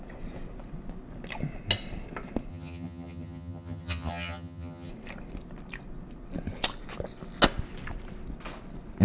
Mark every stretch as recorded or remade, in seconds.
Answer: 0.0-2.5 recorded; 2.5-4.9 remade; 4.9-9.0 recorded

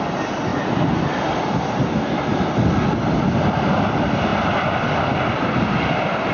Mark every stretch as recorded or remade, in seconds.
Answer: 0.0-6.3 recorded

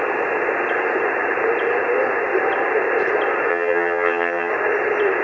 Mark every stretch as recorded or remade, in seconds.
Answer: 0.0-3.5 recorded; 3.5-4.5 remade; 4.5-5.2 recorded

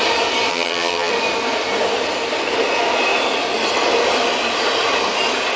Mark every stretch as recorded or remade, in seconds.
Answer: 0.0-0.5 recorded; 0.5-1.1 remade; 1.1-5.6 recorded

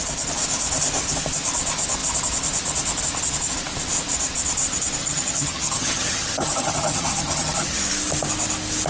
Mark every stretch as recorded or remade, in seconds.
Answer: 0.0-5.0 recorded; 5.0-7.8 remade; 7.8-8.9 recorded

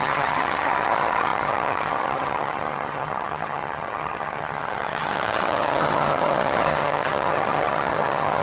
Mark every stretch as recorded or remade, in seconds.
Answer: 0.0-8.4 remade